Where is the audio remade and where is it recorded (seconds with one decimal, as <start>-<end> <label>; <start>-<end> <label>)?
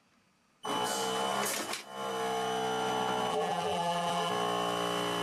0.0-3.3 recorded; 3.3-4.3 remade; 4.3-5.2 recorded